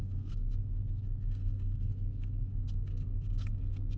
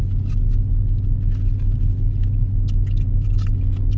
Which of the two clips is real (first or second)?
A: second